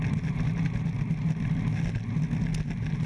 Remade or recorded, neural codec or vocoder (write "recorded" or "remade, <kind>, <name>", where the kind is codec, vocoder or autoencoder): recorded